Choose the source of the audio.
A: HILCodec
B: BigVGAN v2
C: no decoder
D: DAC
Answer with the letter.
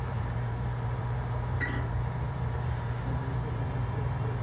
B